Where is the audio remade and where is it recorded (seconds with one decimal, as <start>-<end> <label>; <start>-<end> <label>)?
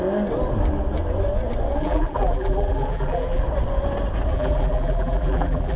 0.0-1.8 recorded; 1.8-3.4 remade; 3.4-4.3 recorded; 4.3-5.8 remade